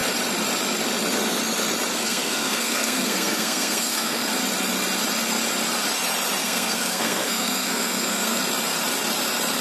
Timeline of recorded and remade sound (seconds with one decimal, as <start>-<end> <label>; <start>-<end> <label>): 0.0-1.9 recorded; 1.9-4.3 remade; 4.3-6.4 recorded; 6.4-8.4 remade; 8.4-9.6 recorded